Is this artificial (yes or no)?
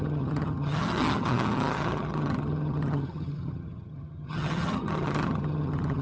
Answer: yes